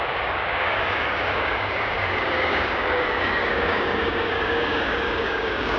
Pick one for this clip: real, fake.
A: fake